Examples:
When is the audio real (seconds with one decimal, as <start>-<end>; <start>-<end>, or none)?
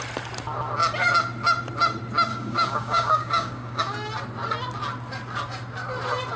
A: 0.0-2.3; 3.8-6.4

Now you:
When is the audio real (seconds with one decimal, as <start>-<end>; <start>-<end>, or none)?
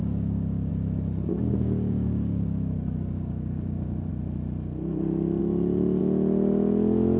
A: 0.7-1.3; 4.1-5.4; 6.0-7.2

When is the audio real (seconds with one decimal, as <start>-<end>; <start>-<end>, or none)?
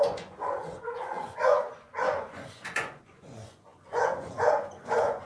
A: none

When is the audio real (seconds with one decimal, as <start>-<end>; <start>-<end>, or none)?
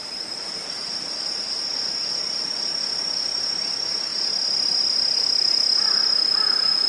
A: 2.1-6.9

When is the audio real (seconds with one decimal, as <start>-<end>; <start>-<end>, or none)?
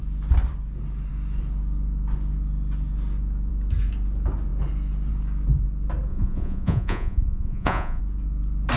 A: 0.0-6.1; 8.0-8.8